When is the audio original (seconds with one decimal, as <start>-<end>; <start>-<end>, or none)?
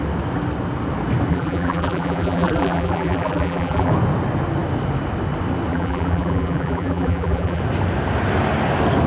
0.0-1.3; 3.9-5.7; 7.6-9.1